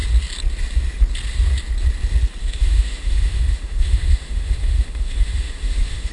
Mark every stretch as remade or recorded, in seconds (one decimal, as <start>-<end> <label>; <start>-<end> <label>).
0.0-2.4 recorded; 2.4-6.1 remade